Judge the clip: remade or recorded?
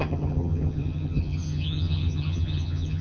remade